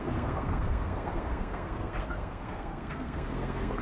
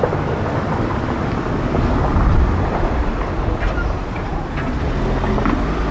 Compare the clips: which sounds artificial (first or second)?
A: first